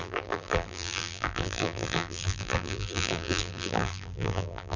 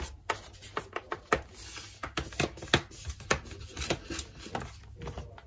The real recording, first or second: second